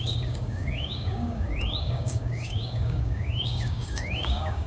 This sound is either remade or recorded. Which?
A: remade